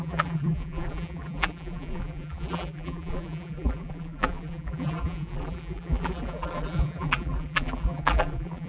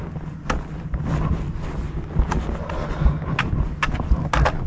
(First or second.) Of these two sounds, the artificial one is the first